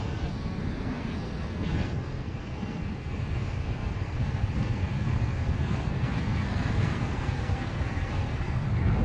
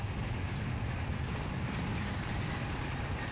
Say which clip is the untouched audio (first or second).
second